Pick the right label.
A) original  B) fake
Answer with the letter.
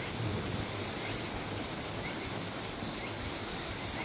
A